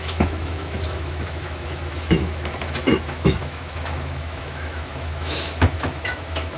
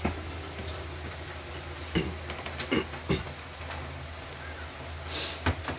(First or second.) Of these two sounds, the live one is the second